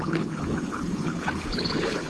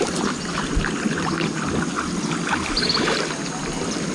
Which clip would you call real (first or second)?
second